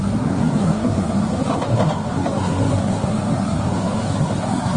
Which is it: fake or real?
fake